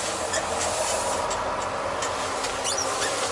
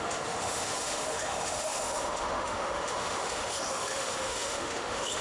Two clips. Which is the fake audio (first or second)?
second